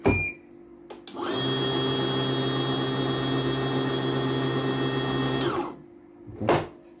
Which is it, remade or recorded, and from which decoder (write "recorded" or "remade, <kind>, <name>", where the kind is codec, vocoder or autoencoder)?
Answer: recorded